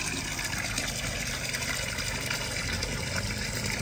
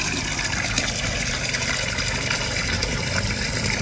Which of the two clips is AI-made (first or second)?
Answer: second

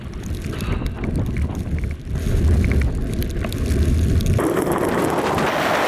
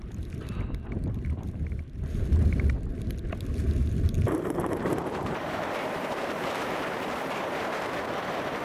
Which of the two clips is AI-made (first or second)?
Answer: second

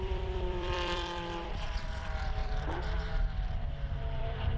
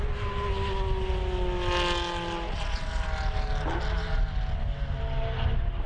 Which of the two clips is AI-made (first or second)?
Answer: first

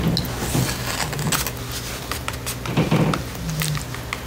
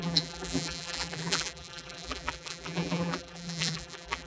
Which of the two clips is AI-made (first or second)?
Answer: second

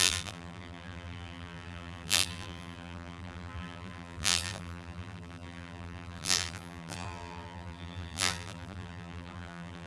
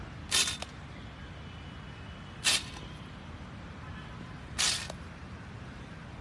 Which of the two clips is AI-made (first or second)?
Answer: first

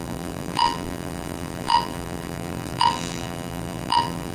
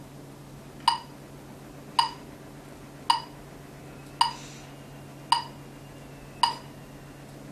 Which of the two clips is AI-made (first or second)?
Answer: first